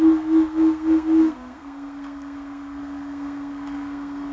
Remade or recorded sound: remade